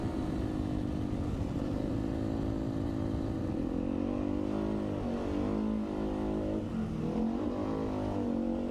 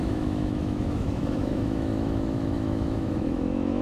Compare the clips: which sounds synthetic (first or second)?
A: second